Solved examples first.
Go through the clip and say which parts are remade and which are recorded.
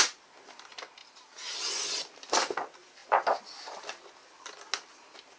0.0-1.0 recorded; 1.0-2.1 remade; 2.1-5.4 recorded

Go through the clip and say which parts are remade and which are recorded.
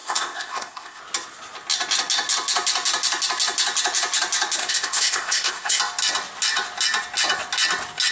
0.0-1.0 remade; 1.0-4.6 recorded; 4.6-5.8 remade; 5.8-8.1 recorded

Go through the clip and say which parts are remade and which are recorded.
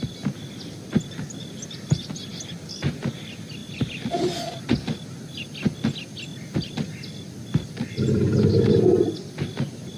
0.0-2.3 recorded; 2.3-3.1 remade; 3.1-3.6 recorded; 3.6-4.6 remade; 4.6-6.3 recorded; 6.3-8.5 remade; 8.5-10.0 recorded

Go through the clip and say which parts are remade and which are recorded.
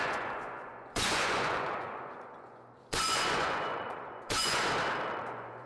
0.0-4.6 remade; 4.6-5.2 recorded; 5.2-5.7 remade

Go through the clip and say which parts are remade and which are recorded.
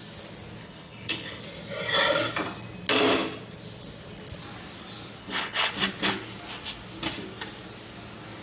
0.0-0.6 recorded; 0.6-1.4 remade; 1.4-5.2 recorded; 5.2-5.7 remade; 5.7-8.4 recorded